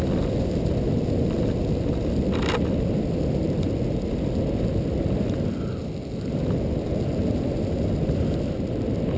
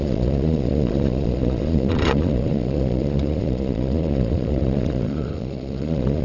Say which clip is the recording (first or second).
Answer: first